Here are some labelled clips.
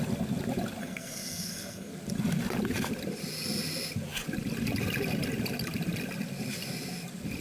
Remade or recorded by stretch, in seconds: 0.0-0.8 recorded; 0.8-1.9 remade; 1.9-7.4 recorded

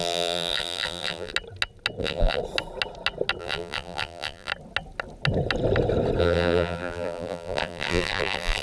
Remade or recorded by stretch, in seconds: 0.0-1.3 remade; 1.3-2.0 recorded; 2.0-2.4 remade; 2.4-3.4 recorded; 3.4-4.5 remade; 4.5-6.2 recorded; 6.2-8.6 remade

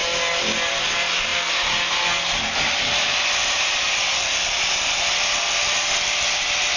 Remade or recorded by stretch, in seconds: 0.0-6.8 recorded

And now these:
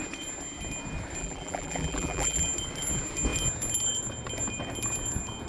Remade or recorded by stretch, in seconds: 0.0-1.2 recorded; 1.2-2.4 remade; 2.4-5.5 recorded

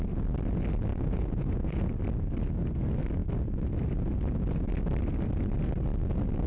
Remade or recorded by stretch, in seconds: 0.0-0.9 recorded; 0.9-1.9 remade; 1.9-6.5 recorded

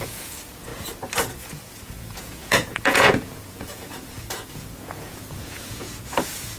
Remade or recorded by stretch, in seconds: 0.0-0.7 remade; 0.7-1.3 recorded; 1.3-6.6 remade

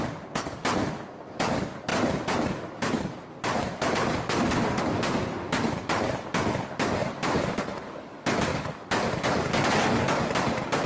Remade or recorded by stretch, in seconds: 0.0-1.9 recorded; 1.9-4.8 remade; 4.8-7.0 recorded; 7.0-7.6 remade; 7.6-10.9 recorded